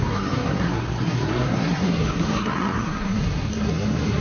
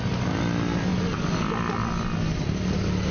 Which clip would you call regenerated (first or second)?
first